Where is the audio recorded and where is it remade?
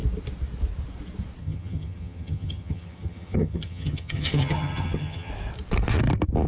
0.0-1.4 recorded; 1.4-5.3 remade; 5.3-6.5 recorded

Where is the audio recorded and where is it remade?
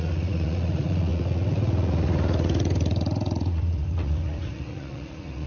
0.0-5.5 remade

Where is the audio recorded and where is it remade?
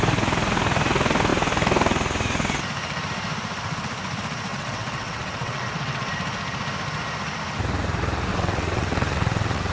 0.0-4.5 recorded; 4.5-6.1 remade; 6.1-8.3 recorded; 8.3-9.7 remade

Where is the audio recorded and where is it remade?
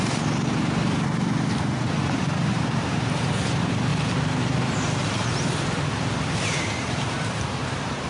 0.0-3.9 remade; 3.9-6.4 recorded; 6.4-8.1 remade